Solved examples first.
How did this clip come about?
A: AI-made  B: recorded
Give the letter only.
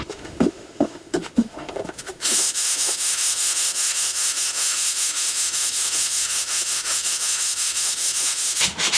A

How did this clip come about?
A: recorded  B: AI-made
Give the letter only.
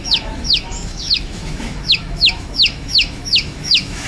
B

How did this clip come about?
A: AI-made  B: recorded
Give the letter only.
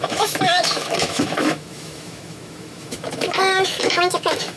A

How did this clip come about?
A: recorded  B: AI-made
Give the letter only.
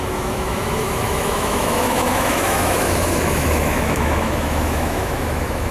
B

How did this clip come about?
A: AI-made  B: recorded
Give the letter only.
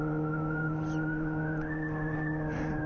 B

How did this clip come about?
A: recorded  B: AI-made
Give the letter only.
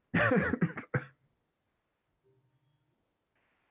A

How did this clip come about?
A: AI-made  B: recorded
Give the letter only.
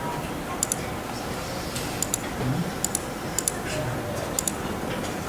B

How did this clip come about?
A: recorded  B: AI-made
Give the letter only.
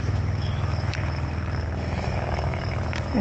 B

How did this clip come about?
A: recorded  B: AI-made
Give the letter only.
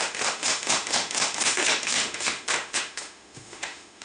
B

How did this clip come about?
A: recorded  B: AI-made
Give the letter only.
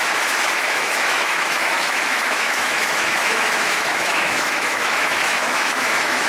B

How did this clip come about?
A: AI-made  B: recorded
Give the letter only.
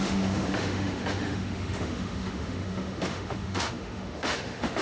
A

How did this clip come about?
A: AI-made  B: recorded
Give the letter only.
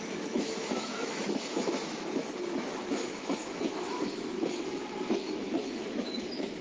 A